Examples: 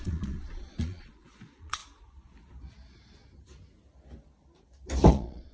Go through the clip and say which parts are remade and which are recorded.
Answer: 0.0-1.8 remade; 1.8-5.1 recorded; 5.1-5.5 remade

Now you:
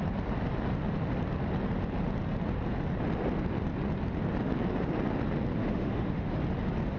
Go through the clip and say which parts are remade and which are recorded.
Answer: 0.0-5.6 recorded; 5.6-6.4 remade; 6.4-7.0 recorded